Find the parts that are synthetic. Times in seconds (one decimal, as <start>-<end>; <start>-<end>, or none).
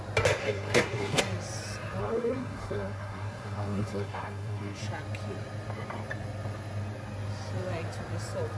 0.4-1.2; 2.0-4.8